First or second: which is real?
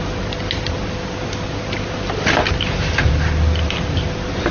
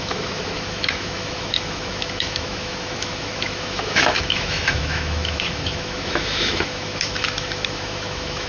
first